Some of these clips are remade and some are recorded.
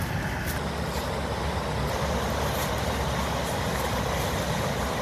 recorded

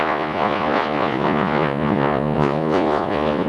remade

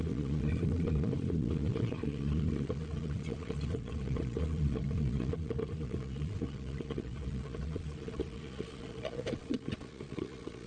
remade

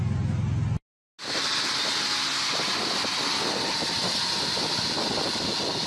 recorded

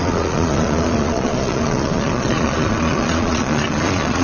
remade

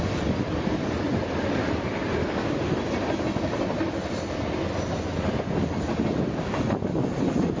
recorded